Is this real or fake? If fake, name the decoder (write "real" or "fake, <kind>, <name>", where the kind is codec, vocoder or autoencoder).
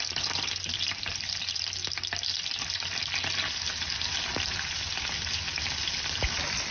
real